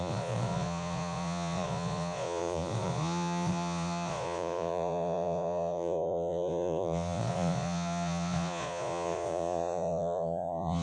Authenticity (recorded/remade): remade